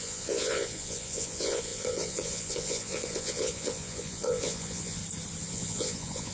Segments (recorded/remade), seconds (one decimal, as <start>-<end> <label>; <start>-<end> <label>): 0.0-5.0 remade; 5.0-5.5 recorded; 5.5-6.3 remade